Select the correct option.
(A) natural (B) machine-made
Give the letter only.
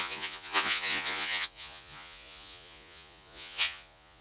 B